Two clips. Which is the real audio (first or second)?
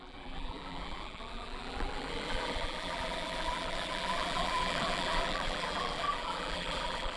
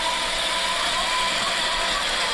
second